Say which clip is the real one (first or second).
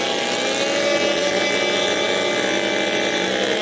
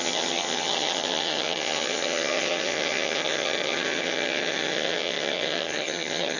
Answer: first